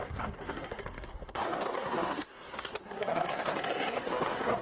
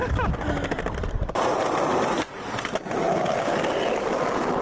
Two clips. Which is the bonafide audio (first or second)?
second